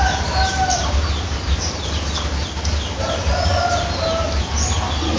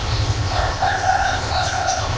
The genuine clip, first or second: first